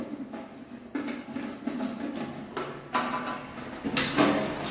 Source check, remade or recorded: recorded